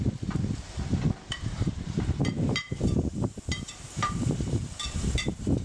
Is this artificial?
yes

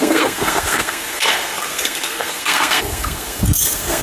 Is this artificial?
yes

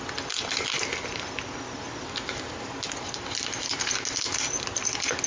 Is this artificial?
no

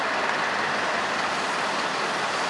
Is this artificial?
no